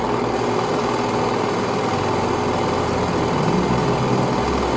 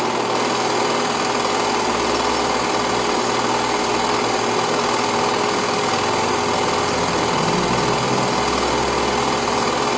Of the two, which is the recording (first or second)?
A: second